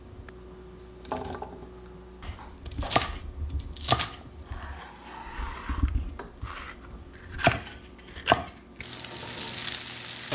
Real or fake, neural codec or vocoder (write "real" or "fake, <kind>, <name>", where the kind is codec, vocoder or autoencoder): real